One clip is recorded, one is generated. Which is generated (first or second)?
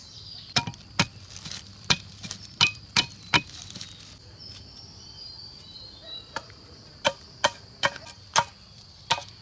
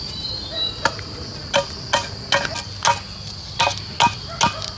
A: first